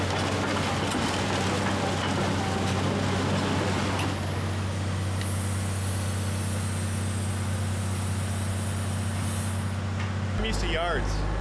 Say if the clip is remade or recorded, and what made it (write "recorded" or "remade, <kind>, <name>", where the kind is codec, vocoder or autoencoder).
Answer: recorded